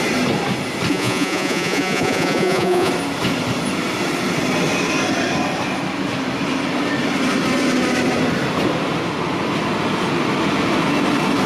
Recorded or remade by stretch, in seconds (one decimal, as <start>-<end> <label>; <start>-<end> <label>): 0.0-0.9 recorded; 0.9-2.9 remade; 2.9-11.5 recorded